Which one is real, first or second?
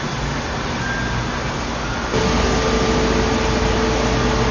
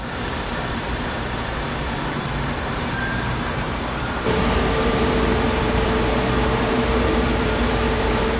first